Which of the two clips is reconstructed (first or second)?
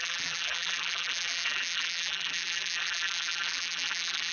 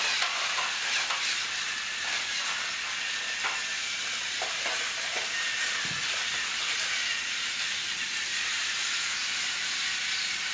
first